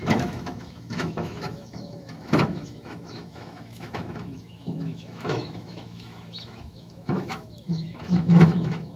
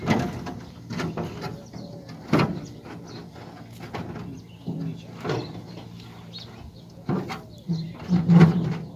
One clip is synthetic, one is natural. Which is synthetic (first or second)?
first